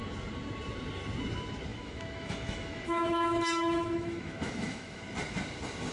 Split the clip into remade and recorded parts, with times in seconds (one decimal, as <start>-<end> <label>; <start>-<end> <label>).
0.0-1.7 recorded; 1.7-5.0 remade; 5.0-5.9 recorded